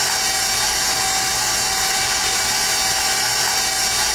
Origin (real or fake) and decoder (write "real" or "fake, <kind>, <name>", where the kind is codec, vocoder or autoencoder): real